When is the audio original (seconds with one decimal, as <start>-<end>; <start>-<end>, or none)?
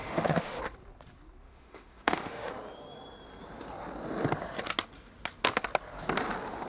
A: 0.6-1.4; 2.5-6.7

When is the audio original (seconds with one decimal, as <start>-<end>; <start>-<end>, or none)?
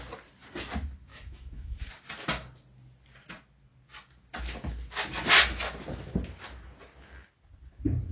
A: 0.0-1.1; 1.8-8.1